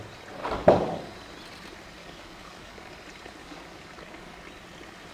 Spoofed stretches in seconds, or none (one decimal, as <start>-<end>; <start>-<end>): 0.4-1.0; 2.0-2.9; 3.4-4.4